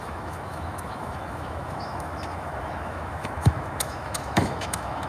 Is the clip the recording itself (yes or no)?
no